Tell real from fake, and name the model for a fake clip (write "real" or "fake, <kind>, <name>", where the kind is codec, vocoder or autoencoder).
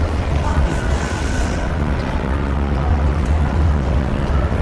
fake, vocoder, WaveNeXt